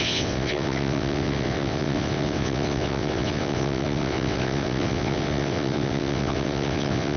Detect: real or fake fake